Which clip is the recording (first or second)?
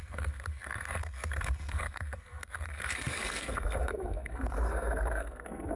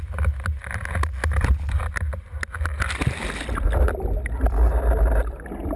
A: second